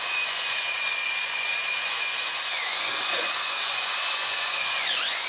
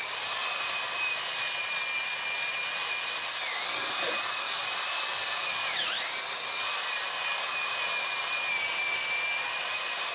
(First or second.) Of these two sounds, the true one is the second